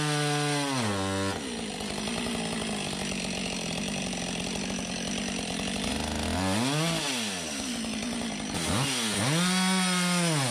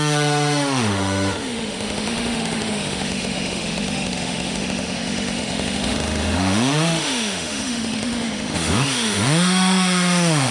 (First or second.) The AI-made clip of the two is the second